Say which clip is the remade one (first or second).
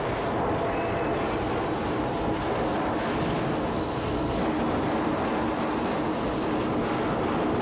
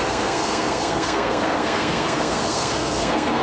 second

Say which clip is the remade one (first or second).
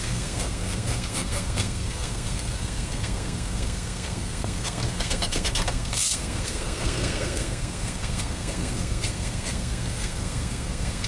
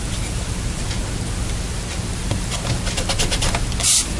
first